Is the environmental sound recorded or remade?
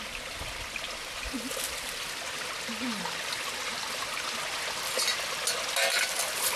recorded